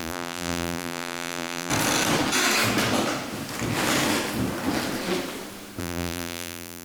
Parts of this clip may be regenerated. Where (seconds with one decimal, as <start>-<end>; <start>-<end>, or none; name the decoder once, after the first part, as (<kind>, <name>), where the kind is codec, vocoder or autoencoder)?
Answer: 0.0-1.7 (vocoder, BigVGAN v2); 5.8-6.8